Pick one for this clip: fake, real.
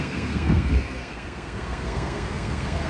fake